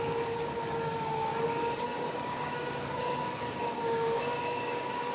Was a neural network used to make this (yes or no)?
yes